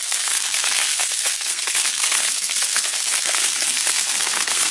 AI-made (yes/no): yes